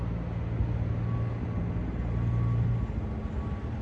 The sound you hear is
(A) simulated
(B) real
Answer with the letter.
B